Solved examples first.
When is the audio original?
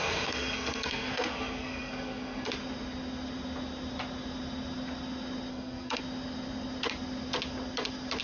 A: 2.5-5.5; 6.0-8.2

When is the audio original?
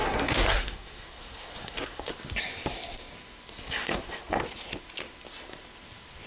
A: 2.1-3.6; 4.4-6.3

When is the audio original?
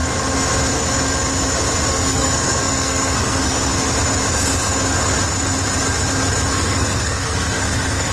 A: 0.0-1.9; 3.7-6.5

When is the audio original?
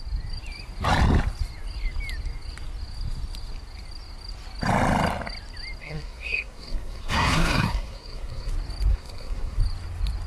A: 0.0-5.8; 8.5-8.9; 9.6-10.3